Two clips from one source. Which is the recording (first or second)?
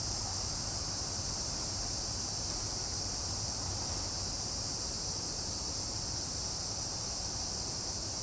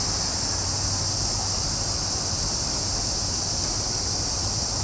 second